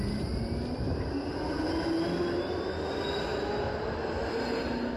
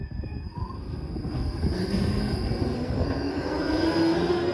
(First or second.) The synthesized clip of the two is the second